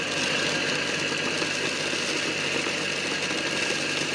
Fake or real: real